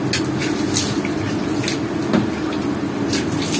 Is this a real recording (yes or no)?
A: yes